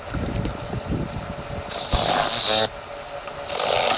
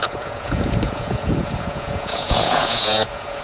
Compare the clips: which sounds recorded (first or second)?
first